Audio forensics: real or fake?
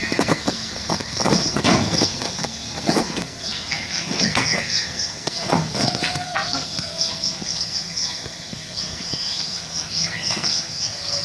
fake